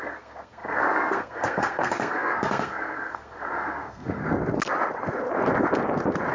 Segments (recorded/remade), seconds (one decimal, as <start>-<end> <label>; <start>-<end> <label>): 0.0-4.2 remade; 4.2-6.3 recorded